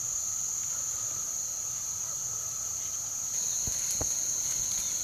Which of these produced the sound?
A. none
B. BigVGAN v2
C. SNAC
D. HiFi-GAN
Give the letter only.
A